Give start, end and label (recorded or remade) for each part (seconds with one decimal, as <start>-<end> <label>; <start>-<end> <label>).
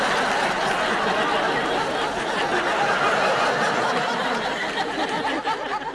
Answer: 0.0-5.9 recorded